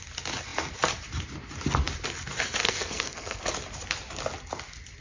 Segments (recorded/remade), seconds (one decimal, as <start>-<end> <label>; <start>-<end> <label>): 0.0-2.6 recorded; 2.6-3.4 remade; 3.4-5.0 recorded